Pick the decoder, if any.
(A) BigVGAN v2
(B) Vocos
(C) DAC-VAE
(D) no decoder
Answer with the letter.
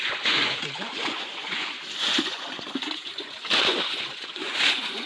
B